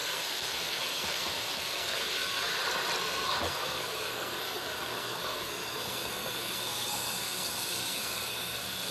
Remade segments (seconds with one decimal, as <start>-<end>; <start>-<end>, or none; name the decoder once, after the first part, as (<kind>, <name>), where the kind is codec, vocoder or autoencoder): 0.0-2.5 (codec, SNAC); 3.0-8.9